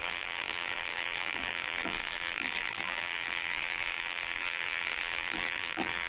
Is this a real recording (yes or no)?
no